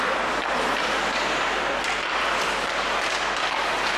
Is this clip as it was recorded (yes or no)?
no